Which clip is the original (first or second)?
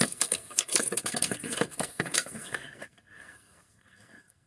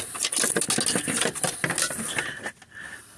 second